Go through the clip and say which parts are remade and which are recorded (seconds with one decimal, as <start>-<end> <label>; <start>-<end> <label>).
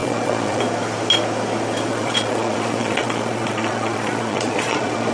0.0-0.6 remade; 0.6-1.9 recorded; 1.9-5.1 remade